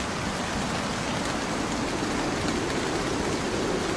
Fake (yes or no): no